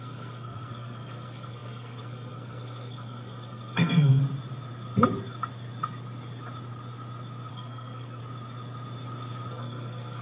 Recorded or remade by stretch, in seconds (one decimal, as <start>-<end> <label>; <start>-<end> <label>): 0.0-4.2 remade; 4.2-7.5 recorded; 7.5-8.2 remade; 8.2-9.5 recorded; 9.5-10.2 remade